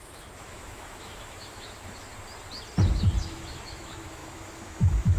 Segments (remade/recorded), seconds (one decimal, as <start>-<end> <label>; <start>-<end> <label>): 0.0-2.1 remade; 2.1-3.2 recorded; 3.2-5.2 remade